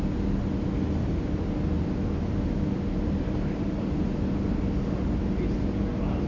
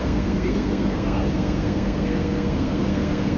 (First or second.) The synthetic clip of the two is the second